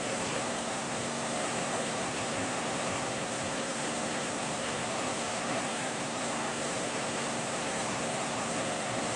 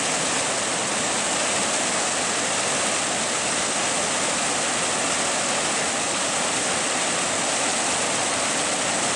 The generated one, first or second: first